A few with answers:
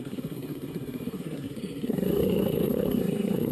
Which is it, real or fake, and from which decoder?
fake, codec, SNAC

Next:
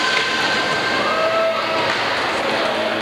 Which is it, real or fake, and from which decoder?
real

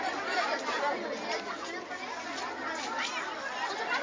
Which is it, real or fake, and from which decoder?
real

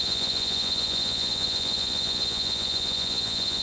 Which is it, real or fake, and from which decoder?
fake, vocoder, Vocos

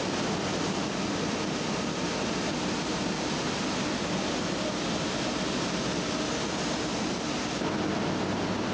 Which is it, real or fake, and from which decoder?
real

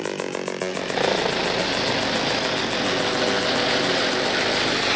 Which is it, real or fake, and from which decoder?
real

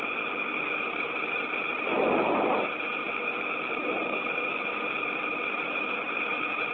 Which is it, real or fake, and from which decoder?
real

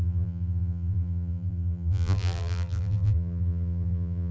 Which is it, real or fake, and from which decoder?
fake, vocoder, BigVGAN v2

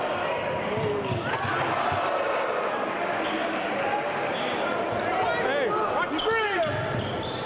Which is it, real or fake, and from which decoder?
real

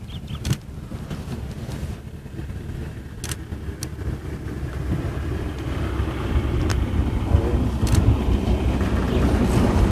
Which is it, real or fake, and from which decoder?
real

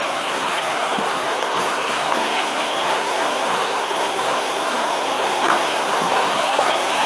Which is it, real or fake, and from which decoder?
fake, codec, SNAC